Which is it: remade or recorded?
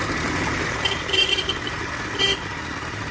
remade